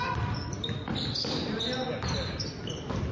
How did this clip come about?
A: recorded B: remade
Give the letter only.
A